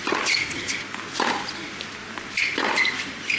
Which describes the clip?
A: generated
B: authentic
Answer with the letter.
B